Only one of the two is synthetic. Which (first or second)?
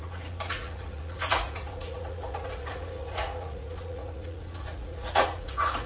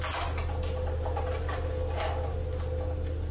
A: first